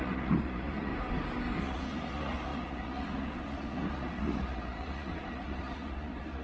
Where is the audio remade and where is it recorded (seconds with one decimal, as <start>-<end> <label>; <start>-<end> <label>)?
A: 0.0-0.9 remade; 0.9-1.6 recorded; 1.6-6.4 remade